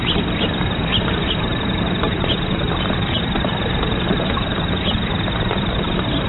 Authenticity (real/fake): fake